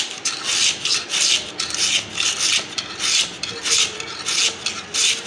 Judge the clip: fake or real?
real